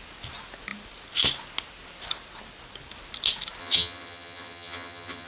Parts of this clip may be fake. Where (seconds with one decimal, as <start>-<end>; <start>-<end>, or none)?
3.6-5.3